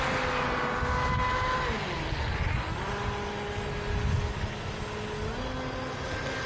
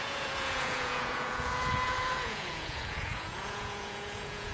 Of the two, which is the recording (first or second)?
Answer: first